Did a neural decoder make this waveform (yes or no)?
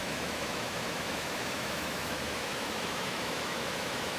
yes